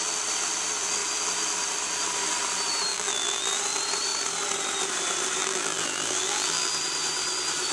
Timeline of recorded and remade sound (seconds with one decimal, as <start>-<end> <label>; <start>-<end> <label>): 0.0-2.9 recorded; 2.9-3.6 remade; 3.6-5.4 recorded; 5.4-6.7 remade; 6.7-7.7 recorded